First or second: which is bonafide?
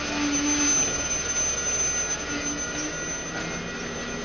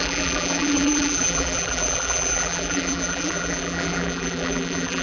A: first